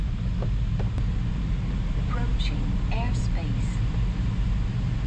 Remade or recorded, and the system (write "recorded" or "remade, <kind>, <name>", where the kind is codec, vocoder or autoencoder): recorded